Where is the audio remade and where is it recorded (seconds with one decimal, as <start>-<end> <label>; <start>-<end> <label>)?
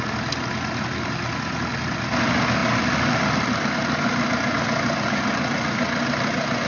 0.0-6.7 recorded